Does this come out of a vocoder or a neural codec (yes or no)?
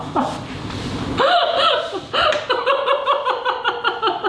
yes